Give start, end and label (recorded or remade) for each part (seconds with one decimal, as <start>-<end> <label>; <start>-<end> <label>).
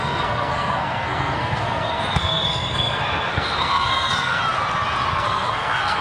0.0-4.4 remade; 4.4-5.1 recorded; 5.1-6.0 remade